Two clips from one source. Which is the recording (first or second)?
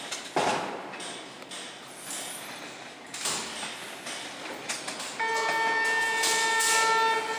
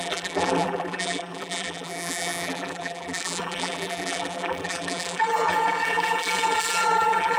first